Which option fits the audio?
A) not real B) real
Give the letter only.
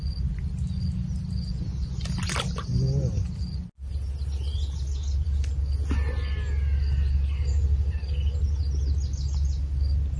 B